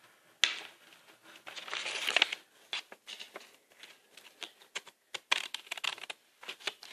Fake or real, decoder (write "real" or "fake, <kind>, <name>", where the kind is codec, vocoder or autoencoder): real